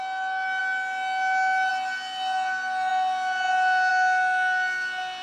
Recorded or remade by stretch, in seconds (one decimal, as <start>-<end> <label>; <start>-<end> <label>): 0.0-5.2 recorded